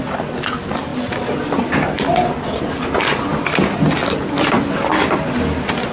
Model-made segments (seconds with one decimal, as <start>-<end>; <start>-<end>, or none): none